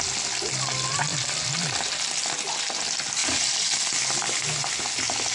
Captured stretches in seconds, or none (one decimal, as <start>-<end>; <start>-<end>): 0.0-5.3